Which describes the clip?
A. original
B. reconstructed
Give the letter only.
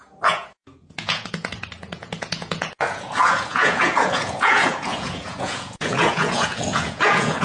B